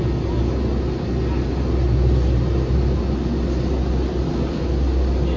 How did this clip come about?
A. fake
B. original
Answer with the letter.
B